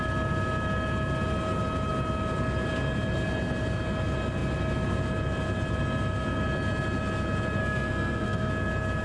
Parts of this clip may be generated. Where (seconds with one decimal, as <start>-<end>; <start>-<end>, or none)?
7.6-8.5